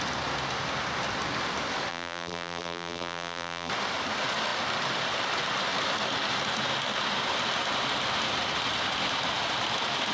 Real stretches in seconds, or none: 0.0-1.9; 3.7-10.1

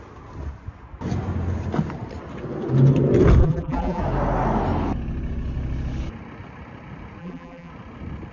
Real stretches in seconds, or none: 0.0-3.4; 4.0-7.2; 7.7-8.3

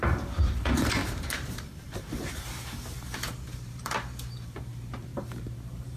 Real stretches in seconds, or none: none